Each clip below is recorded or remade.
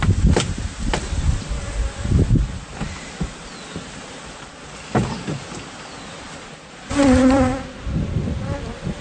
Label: recorded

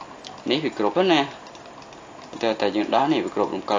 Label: recorded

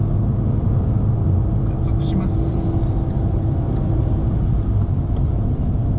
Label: recorded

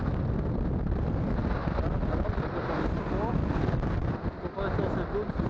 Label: recorded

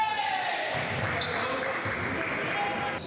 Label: recorded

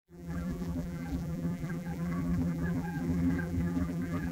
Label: remade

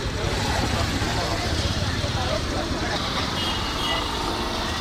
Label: remade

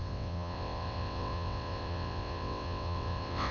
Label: remade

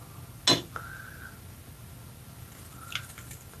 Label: recorded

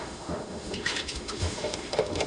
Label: remade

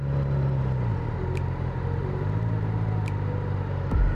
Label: recorded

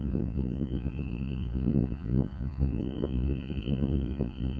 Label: remade